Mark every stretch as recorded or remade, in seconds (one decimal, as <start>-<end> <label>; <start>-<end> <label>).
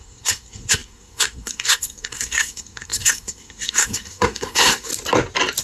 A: 0.0-4.9 remade; 4.9-5.6 recorded